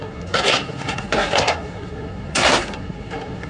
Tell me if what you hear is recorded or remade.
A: remade